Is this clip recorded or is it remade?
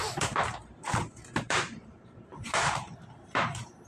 remade